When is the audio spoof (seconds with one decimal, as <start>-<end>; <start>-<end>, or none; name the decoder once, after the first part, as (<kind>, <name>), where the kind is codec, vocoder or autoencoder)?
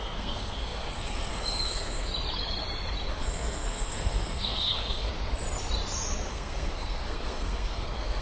0.0-2.1 (codec, SNAC); 3.1-5.1; 6.3-8.2